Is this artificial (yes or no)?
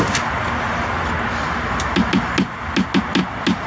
no